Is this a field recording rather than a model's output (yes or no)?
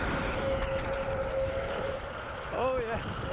yes